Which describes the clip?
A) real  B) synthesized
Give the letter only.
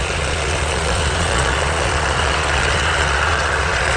B